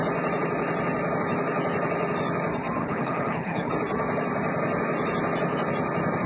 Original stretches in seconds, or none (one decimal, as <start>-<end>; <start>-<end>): 0.0-2.8; 3.7-6.3